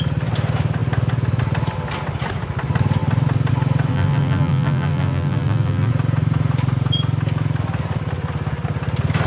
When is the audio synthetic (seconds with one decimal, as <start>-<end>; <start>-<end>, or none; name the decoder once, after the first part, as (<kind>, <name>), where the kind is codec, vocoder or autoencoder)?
3.9-5.9 (vocoder, BigVGAN v2)